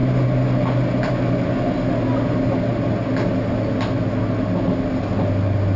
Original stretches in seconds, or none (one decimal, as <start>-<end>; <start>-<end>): 0.0-5.8